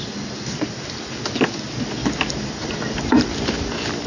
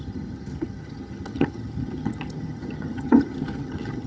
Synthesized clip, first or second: second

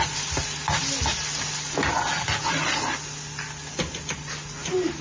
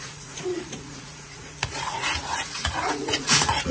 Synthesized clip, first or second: second